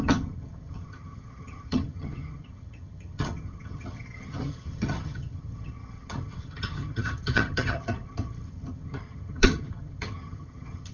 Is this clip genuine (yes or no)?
no